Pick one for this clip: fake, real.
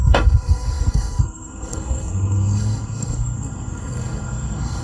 fake